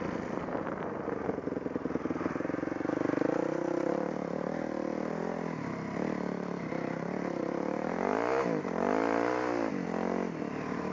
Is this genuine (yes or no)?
yes